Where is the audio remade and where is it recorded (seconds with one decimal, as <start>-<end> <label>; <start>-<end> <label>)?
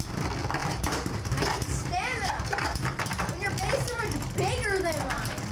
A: 0.0-0.6 recorded; 0.6-3.5 remade; 3.5-5.5 recorded